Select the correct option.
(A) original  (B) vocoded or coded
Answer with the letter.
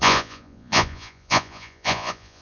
B